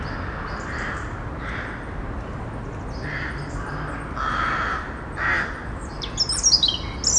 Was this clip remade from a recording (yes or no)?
no